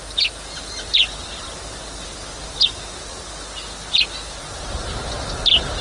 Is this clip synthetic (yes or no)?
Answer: no